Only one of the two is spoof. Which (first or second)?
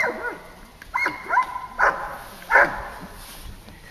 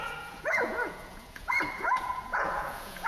second